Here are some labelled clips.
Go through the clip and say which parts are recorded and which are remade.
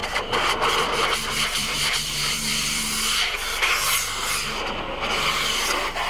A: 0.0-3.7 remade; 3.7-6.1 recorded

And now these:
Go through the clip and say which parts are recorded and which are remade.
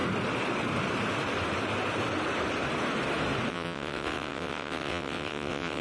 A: 0.0-3.5 recorded; 3.5-5.8 remade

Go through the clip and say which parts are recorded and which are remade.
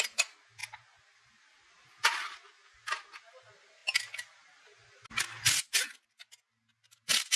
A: 0.0-7.4 recorded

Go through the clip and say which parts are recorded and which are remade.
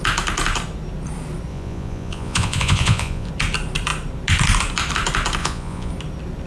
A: 0.0-1.5 recorded; 1.5-3.3 remade; 3.3-5.4 recorded; 5.4-5.9 remade; 5.9-6.5 recorded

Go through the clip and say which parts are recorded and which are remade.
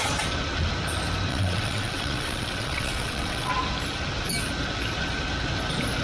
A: 0.0-1.3 recorded; 1.3-3.5 remade; 3.5-6.0 recorded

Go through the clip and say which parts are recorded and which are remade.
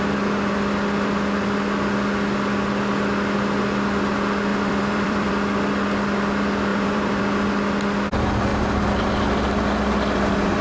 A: 0.0-4.5 recorded; 4.5-5.3 remade; 5.3-6.7 recorded; 6.7-7.2 remade; 7.2-10.6 recorded